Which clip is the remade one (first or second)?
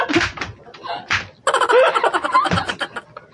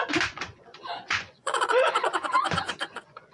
second